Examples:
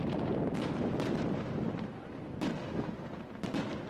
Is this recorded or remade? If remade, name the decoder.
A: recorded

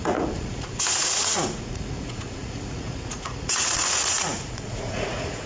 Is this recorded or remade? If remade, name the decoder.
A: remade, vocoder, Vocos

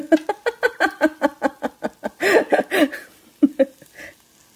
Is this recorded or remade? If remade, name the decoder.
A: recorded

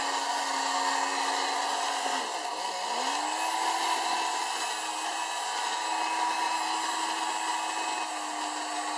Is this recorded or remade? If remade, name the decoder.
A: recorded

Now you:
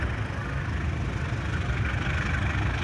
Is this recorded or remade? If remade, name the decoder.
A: recorded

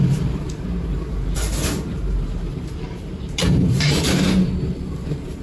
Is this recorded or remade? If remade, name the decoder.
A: remade, vocoder, BigVGAN v2